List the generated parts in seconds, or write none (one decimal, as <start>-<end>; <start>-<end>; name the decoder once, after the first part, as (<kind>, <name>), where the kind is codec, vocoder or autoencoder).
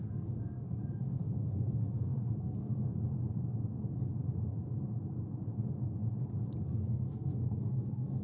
0.0-2.9 (codec, SNAC); 6.6-8.2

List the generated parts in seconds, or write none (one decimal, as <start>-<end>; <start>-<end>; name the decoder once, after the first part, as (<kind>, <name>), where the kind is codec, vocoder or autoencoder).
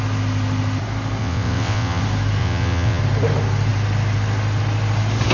1.2-2.0 (vocoder, WaveNeXt); 2.4-3.0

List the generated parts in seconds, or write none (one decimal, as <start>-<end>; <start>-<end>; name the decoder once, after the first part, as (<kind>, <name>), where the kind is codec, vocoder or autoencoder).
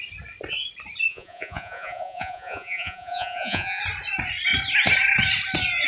1.1-3.8 (vocoder, Vocos)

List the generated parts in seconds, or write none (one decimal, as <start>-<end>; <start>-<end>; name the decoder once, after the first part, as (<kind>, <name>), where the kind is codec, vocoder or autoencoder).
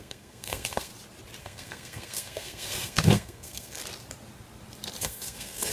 0.0-0.9 (codec, SNAC); 1.4-3.8; 5.0-5.7